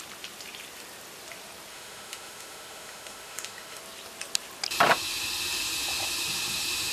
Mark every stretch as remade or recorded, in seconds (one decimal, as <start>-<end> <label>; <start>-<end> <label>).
0.0-1.7 recorded; 1.7-3.8 remade; 3.8-6.9 recorded